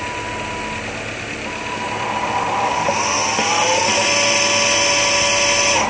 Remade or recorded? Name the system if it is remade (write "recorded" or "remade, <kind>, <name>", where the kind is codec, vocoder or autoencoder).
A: recorded